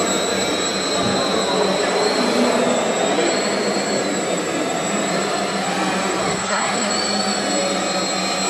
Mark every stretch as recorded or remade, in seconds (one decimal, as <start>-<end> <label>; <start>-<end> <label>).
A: 0.0-6.2 recorded; 6.2-6.9 remade; 6.9-8.5 recorded